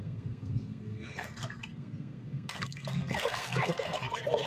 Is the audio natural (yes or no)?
no